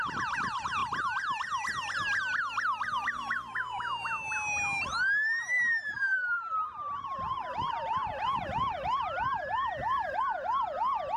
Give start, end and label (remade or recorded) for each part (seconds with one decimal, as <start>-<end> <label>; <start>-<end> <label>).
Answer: 0.0-6.1 recorded; 6.1-10.2 remade; 10.2-11.2 recorded